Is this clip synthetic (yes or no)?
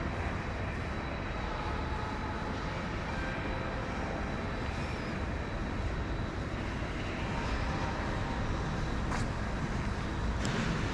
no